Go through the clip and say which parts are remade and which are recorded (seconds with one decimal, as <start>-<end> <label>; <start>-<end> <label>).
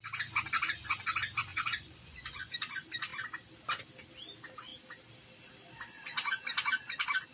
0.0-1.5 recorded; 1.5-2.5 remade; 2.5-7.3 recorded